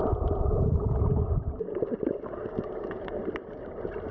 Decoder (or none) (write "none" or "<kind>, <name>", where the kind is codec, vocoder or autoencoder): vocoder, BigVGAN v2